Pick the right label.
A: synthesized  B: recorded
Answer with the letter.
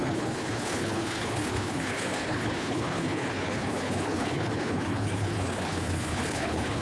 A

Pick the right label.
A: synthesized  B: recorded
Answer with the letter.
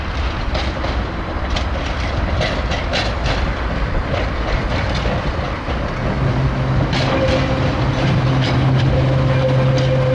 B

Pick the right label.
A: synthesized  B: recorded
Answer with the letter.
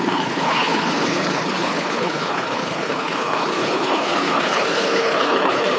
A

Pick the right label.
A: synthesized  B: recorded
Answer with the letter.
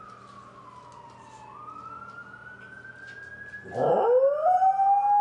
B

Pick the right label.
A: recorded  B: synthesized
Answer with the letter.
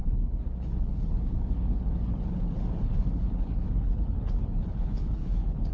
B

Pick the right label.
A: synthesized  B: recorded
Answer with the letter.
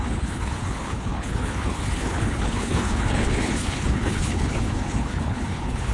A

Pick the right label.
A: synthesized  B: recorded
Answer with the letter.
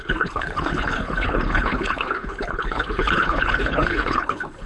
A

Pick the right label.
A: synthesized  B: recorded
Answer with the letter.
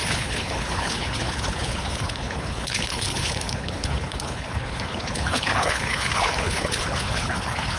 A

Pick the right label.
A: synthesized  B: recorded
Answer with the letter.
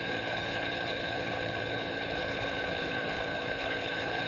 A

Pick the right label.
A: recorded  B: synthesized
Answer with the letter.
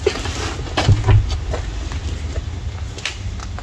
A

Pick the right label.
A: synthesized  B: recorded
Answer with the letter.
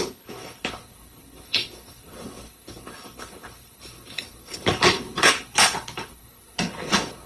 A